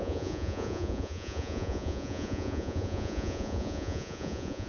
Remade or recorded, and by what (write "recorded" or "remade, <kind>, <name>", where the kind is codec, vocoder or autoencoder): remade, vocoder, Vocos